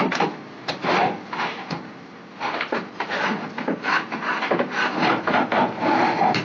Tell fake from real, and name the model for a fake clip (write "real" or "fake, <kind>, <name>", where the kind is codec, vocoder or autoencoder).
real